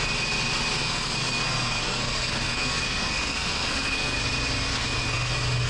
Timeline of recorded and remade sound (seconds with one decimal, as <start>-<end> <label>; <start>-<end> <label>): 0.0-0.8 recorded; 0.8-4.2 remade; 4.2-4.7 recorded; 4.7-5.3 remade; 5.3-5.7 recorded